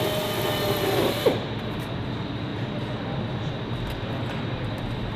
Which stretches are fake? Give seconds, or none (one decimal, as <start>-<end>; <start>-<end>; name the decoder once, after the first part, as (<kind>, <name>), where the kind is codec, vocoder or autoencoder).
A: none